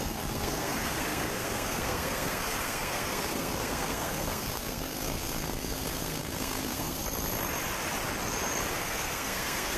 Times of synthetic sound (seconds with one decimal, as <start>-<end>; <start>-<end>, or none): 0.0-7.0; 8.7-9.8